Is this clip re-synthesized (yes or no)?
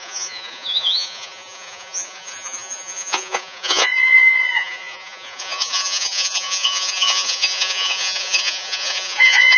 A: yes